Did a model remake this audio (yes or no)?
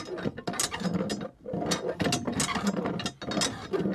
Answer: no